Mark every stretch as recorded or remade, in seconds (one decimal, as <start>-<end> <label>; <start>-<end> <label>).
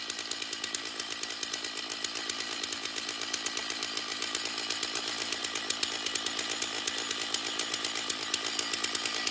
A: 0.0-9.3 recorded